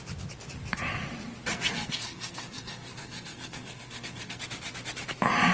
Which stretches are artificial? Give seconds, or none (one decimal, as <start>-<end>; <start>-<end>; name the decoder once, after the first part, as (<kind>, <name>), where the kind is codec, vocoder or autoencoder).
1.5-4.4 (codec, SNAC)